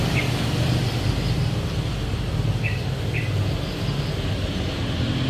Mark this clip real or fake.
real